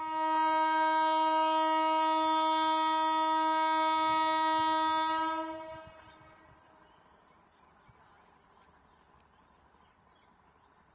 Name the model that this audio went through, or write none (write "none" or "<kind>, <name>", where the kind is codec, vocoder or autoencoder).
none